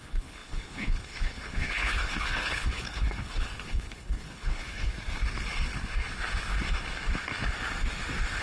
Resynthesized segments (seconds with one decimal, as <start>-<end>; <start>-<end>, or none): 0.0-4.9

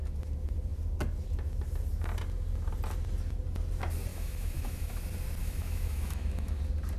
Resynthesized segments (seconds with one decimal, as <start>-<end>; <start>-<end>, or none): 4.1-5.0; 5.4-6.6

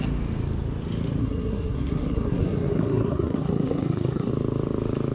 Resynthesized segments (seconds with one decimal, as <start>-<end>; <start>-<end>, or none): 1.2-4.3

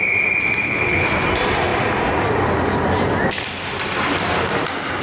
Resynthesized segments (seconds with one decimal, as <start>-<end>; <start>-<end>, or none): 0.6-1.1

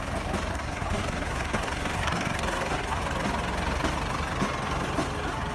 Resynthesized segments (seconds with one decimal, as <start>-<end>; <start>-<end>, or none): 0.5-3.0